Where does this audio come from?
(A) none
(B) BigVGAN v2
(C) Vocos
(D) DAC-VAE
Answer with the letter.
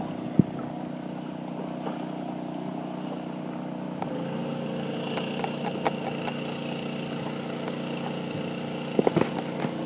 A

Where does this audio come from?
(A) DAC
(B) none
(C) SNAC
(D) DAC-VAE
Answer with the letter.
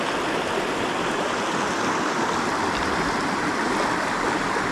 B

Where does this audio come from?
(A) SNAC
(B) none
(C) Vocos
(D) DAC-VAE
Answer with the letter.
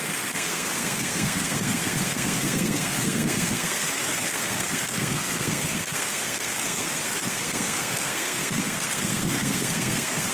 A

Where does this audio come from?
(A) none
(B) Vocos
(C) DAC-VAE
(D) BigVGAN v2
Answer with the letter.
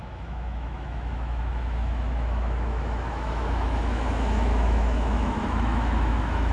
C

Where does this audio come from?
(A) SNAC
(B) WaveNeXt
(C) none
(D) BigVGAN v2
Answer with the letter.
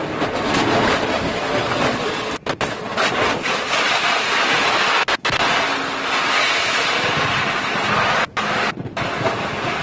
C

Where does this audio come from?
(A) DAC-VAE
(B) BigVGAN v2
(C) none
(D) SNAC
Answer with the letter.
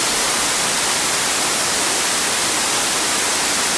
C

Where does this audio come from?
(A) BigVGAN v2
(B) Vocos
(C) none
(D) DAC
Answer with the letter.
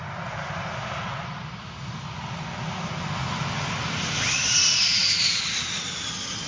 C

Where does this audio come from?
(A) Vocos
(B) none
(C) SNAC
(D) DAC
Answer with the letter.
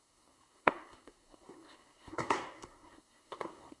C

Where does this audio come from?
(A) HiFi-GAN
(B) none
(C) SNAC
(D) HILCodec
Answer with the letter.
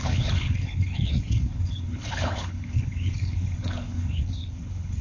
D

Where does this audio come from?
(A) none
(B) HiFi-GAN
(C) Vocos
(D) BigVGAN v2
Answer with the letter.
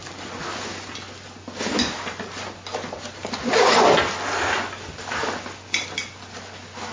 A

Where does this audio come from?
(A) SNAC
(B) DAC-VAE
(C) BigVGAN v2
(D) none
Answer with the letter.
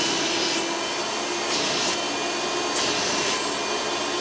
D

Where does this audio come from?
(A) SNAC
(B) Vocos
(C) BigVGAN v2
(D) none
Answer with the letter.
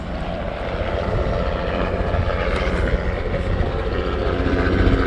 D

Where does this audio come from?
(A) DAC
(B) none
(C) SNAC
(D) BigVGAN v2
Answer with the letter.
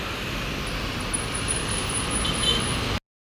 B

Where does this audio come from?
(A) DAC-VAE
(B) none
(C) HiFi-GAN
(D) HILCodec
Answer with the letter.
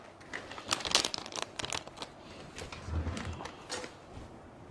B